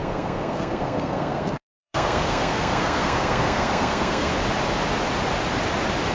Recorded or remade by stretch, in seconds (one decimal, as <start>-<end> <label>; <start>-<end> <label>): 0.0-4.3 remade; 4.3-6.1 recorded